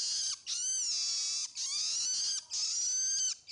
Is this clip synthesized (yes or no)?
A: no